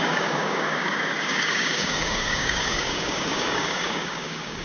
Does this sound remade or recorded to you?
remade